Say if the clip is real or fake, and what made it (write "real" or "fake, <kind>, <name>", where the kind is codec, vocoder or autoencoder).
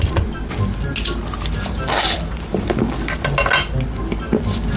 real